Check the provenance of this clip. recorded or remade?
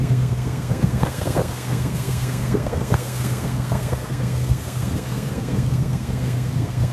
remade